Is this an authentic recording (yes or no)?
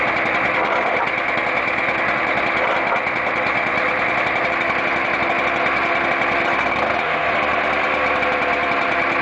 yes